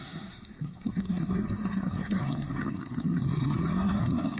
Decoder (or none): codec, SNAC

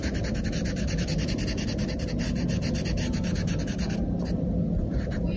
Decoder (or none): none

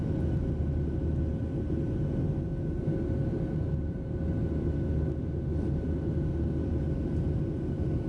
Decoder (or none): none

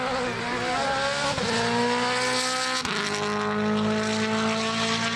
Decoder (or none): none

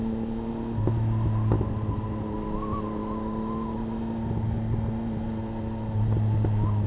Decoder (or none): none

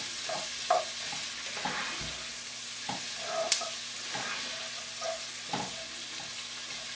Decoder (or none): none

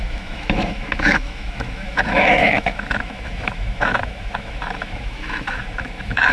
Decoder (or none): autoencoder, DAC-VAE